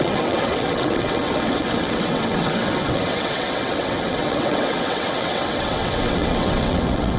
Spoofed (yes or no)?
yes